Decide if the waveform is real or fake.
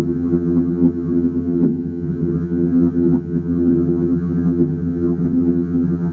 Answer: fake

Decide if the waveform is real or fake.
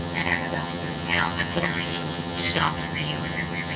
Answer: fake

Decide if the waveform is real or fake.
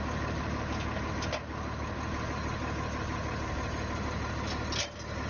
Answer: real